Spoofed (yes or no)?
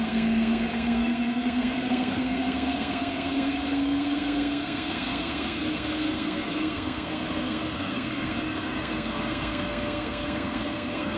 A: yes